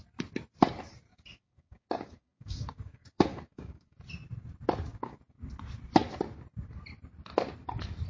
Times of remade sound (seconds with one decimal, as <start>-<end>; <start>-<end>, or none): 1.1-4.0; 4.9-5.4